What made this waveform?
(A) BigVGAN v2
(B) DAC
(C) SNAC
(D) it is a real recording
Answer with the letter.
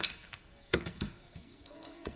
C